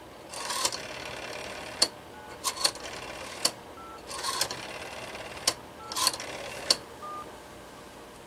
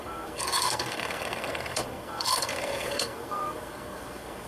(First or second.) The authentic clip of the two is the first